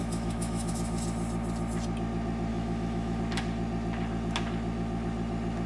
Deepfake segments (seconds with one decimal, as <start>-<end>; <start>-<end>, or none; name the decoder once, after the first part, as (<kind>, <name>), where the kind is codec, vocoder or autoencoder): 0.0-0.7 (autoencoder, DAC-VAE); 2.5-3.2